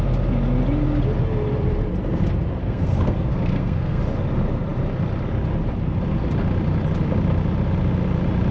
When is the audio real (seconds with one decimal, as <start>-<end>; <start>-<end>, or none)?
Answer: 0.0-2.6; 4.0-8.5